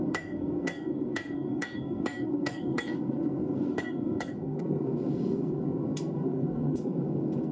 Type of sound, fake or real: fake